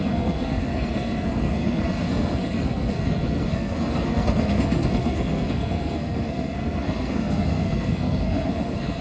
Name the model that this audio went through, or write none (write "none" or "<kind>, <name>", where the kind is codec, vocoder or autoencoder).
codec, SNAC